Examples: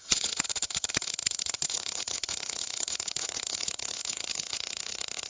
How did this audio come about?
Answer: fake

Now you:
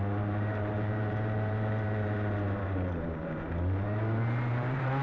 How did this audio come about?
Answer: fake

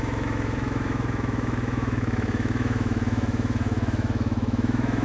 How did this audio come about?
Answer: fake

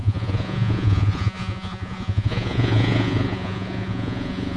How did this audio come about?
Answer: fake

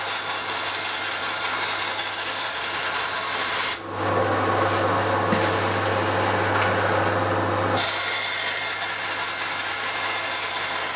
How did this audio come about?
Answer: real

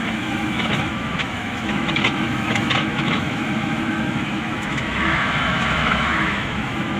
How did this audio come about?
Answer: fake